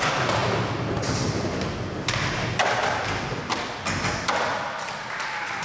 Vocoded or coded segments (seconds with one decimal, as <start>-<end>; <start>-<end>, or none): 4.5-5.6

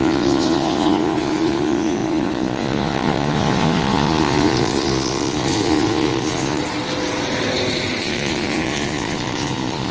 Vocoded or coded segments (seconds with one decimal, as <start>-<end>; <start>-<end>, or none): 0.0-6.6; 8.0-9.9